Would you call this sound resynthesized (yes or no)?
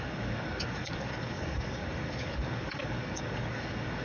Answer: yes